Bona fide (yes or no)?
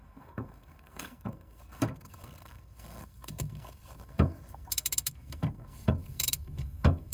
no